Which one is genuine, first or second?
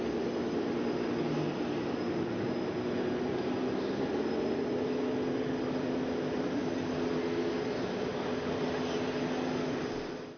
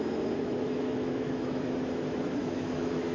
first